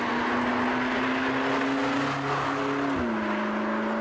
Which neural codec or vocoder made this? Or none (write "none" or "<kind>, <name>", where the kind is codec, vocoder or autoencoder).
none